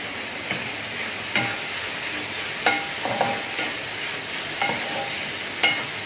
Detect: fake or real real